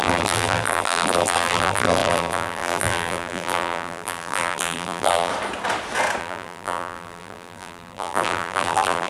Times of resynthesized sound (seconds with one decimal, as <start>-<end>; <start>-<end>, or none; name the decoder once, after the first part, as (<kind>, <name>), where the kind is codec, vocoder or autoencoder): 0.0-5.3 (vocoder, BigVGAN v2); 6.2-9.1